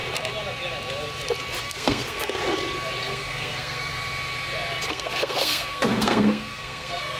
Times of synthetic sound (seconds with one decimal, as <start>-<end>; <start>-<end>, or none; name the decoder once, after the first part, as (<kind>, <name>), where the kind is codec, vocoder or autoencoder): 1.6-2.4 (codec, SNAC); 3.0-3.9; 4.9-7.2